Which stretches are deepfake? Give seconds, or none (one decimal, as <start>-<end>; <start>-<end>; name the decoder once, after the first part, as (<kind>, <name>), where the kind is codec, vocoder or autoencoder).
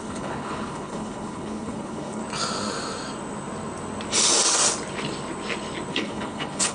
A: 0.0-2.2 (codec, HILCodec); 5.9-6.7